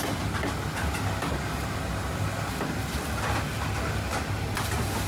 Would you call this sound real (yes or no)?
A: yes